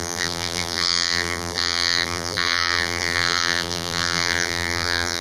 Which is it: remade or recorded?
remade